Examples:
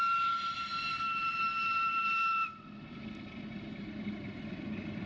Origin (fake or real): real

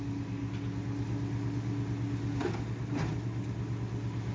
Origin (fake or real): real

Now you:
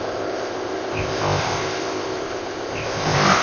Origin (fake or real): fake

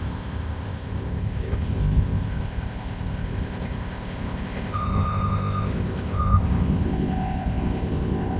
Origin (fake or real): fake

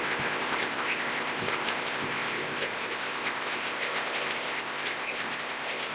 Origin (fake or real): fake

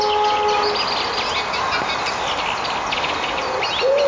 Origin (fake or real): real